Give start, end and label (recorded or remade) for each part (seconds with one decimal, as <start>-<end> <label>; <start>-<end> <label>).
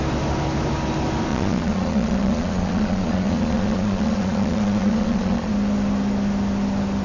0.0-1.3 recorded; 1.3-5.5 remade; 5.5-7.0 recorded